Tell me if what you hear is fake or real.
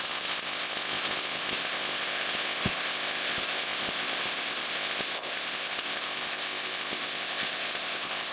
fake